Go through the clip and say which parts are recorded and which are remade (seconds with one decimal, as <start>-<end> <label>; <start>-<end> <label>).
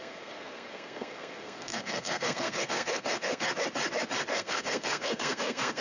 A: 0.0-3.5 remade; 3.5-4.3 recorded; 4.3-5.8 remade